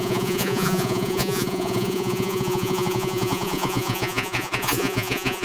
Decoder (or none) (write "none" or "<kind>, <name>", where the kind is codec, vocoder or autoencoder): vocoder, Vocos